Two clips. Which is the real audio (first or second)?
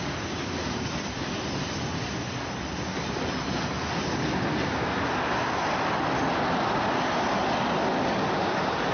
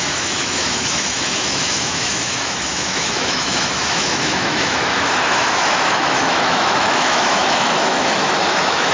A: first